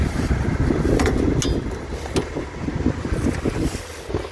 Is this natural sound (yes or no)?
yes